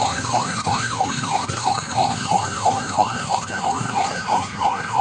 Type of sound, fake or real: fake